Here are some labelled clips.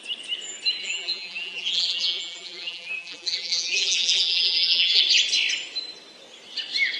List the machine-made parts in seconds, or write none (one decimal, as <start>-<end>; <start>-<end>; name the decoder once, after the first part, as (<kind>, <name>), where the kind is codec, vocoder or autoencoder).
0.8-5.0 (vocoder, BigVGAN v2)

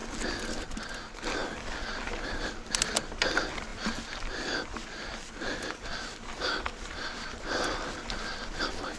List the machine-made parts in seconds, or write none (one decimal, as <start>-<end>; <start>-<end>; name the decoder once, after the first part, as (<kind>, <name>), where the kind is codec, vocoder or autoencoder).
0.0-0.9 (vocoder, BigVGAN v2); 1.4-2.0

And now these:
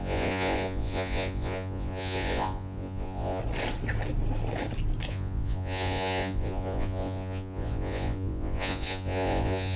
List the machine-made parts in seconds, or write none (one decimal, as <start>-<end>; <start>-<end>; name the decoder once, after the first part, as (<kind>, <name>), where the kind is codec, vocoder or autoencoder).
0.0-3.4 (vocoder, Vocos); 5.1-9.8